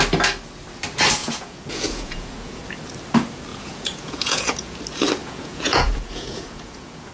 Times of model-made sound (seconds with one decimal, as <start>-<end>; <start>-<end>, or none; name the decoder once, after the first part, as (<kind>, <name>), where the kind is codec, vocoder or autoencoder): 1.2-2.6 (vocoder, Vocos); 3.5-4.8; 5.2-7.1